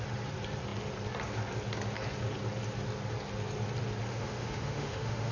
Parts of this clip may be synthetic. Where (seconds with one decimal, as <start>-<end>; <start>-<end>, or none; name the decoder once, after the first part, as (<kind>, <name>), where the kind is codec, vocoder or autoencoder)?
4.1-5.3 (autoencoder, DAC-VAE)